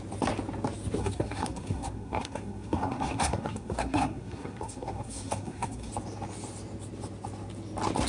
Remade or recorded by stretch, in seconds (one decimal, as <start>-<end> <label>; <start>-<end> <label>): 0.0-1.0 recorded; 1.0-5.9 remade; 5.9-8.1 recorded